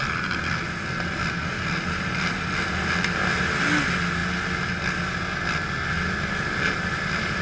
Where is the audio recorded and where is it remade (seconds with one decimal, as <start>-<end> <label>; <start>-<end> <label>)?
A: 0.0-7.4 recorded